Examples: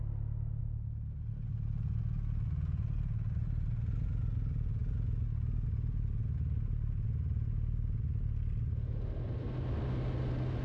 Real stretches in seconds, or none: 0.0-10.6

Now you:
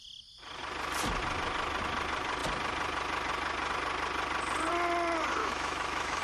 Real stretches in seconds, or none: 0.0-5.4

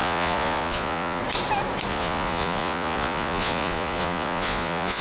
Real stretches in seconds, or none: 1.2-1.9

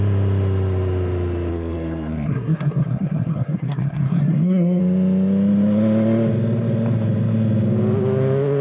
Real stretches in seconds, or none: 0.0-1.5; 4.8-8.6

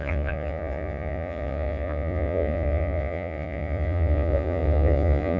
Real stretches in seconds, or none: none

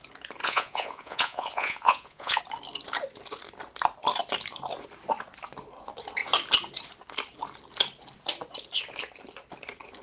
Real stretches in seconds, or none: 0.0-0.4; 2.4-10.0

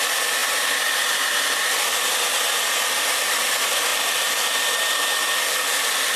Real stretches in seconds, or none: none

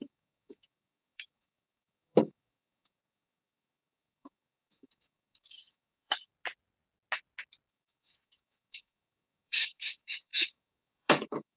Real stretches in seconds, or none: 6.3-7.7